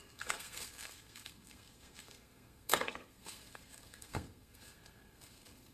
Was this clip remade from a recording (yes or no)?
yes